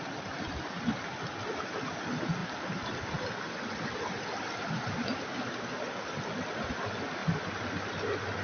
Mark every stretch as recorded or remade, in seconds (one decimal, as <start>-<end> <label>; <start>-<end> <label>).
0.0-2.4 recorded; 2.4-3.3 remade; 3.3-7.2 recorded; 7.2-7.7 remade; 7.7-8.4 recorded